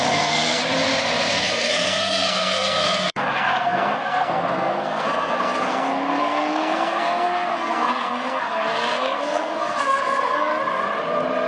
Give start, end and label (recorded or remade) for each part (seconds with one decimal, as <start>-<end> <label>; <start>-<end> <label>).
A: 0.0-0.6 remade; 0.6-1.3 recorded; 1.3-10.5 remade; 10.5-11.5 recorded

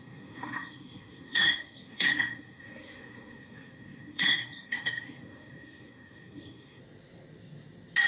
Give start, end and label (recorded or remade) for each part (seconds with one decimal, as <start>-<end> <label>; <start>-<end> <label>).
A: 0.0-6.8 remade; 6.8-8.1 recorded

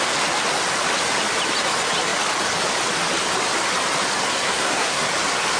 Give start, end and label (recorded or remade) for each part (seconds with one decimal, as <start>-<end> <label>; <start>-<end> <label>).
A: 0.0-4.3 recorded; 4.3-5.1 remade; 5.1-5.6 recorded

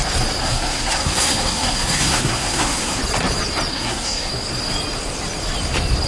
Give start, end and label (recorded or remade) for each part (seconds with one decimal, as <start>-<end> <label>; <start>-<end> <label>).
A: 0.0-0.4 recorded; 0.4-3.0 remade; 3.0-3.7 recorded; 3.7-4.3 remade; 4.3-6.1 recorded